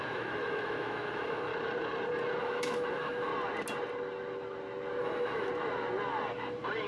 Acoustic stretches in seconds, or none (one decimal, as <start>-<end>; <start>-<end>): 1.5-2.4; 3.3-5.0; 5.5-6.9